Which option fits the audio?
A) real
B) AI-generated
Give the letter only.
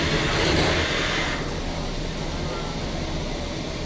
A